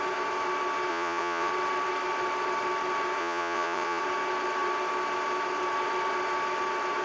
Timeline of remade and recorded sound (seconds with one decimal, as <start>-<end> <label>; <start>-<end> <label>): 0.0-0.9 recorded; 0.9-1.5 remade; 1.5-3.2 recorded; 3.2-4.0 remade; 4.0-7.0 recorded